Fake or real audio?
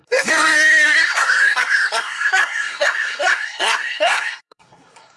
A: fake